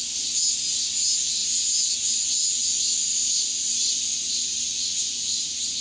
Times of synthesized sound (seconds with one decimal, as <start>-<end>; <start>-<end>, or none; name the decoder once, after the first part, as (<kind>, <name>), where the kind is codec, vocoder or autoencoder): none